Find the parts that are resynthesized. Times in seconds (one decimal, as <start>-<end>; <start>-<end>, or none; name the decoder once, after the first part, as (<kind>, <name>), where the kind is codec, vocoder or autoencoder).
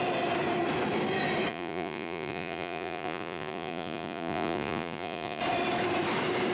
1.5-5.4 (vocoder, Vocos)